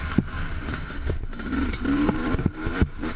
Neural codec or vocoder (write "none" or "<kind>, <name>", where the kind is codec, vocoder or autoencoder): vocoder, BigVGAN v2